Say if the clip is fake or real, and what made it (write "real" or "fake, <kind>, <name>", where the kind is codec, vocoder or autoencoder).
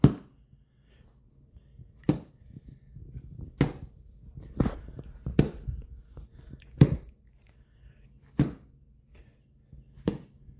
real